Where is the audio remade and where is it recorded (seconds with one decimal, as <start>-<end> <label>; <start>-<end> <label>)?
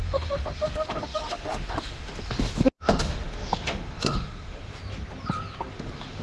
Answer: 0.0-4.8 remade; 4.8-5.7 recorded; 5.7-6.2 remade